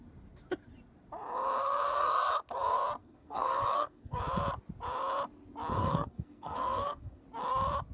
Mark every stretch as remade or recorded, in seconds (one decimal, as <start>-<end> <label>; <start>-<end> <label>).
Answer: 0.0-1.6 recorded; 1.6-2.3 remade; 2.3-3.0 recorded; 3.0-4.2 remade; 4.2-5.8 recorded; 5.8-7.2 remade; 7.2-7.9 recorded